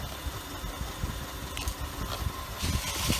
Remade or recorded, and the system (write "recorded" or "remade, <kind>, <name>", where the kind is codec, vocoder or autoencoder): recorded